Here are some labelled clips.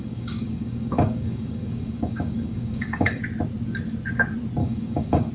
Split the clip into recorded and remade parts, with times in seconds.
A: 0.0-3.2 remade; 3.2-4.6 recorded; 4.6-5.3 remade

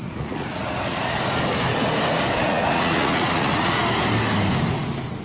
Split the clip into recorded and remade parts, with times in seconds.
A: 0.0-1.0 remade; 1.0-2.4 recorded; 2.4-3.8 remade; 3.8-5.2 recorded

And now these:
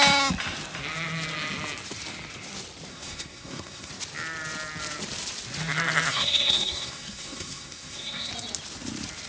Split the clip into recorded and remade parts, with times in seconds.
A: 0.0-2.9 recorded; 2.9-3.9 remade; 3.9-6.1 recorded; 6.1-8.3 remade; 8.3-9.3 recorded